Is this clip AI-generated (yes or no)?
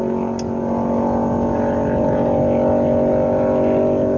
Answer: no